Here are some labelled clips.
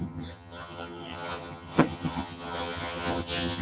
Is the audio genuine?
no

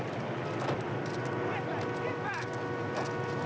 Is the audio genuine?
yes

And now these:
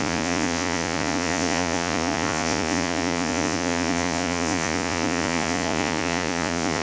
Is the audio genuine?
no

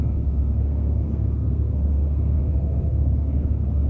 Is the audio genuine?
no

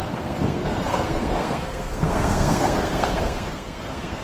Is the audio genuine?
no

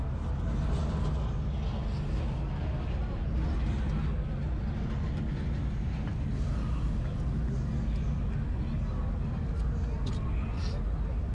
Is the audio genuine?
yes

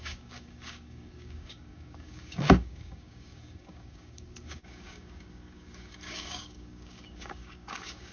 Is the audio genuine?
no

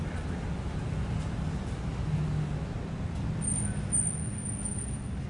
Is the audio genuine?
yes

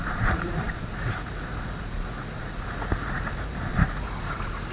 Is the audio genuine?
no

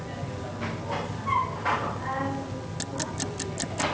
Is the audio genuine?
yes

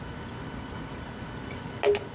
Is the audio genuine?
yes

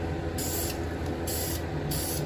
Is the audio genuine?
yes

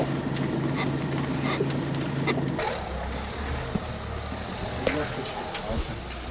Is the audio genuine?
yes